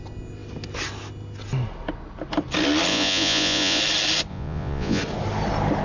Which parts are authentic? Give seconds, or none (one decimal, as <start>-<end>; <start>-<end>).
0.0-2.9; 3.8-4.3; 5.0-5.8